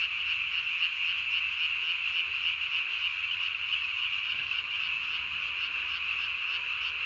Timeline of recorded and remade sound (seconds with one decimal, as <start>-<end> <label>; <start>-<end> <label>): 0.0-3.1 recorded; 3.1-4.8 remade; 4.8-7.1 recorded